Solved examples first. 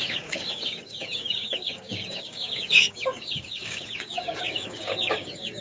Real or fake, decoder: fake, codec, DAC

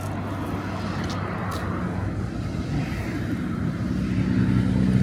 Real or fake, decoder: real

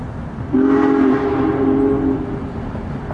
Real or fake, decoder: real